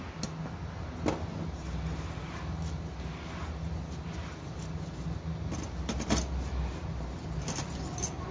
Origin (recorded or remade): recorded